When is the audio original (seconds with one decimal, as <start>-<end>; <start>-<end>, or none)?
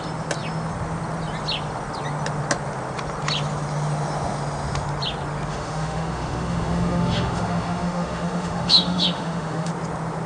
0.0-5.5; 9.7-10.3